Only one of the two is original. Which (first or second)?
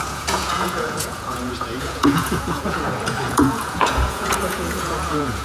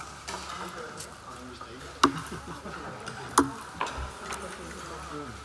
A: second